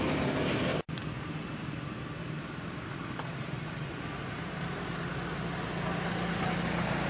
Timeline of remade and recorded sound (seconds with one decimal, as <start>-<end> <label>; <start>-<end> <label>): 0.0-0.7 recorded; 0.7-4.6 remade; 4.6-7.1 recorded